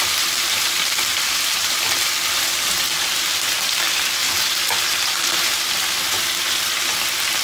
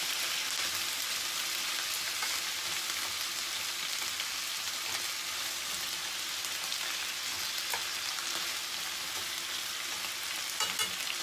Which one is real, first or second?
second